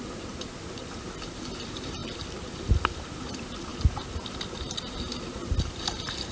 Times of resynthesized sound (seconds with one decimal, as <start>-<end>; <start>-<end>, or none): none